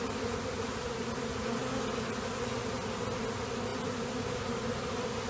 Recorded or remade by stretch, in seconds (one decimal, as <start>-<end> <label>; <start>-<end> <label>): 0.0-5.3 recorded